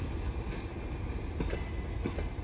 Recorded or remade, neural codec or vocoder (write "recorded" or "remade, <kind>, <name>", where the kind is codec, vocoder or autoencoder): recorded